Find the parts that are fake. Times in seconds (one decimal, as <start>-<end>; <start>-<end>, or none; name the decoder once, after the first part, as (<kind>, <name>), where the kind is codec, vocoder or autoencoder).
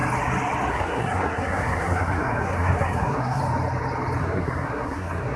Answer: 0.7-3.4 (codec, SNAC); 4.2-5.4